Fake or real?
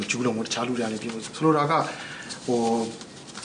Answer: real